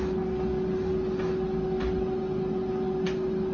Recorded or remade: recorded